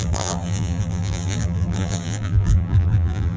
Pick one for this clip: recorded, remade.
remade